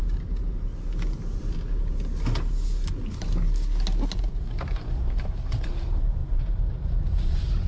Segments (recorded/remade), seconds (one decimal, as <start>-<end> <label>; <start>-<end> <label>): 0.0-0.7 remade; 0.7-4.2 recorded; 4.2-7.7 remade